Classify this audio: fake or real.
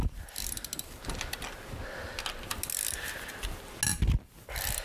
real